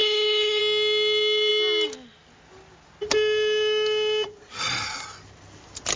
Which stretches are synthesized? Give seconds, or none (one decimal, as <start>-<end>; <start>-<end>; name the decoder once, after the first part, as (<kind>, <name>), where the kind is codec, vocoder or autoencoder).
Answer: 0.0-0.6 (codec, HILCodec)